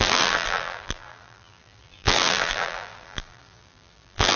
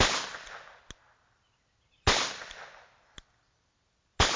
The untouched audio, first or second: second